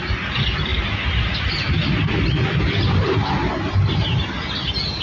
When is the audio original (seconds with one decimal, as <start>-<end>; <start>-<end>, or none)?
0.0-5.0